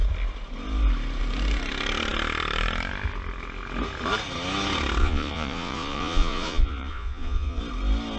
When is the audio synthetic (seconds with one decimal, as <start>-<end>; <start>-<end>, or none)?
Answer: 5.0-7.6